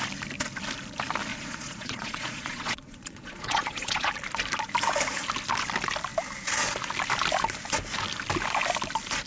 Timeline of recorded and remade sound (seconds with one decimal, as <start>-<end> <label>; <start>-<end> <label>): 0.0-1.3 recorded; 1.3-4.1 remade; 4.1-9.3 recorded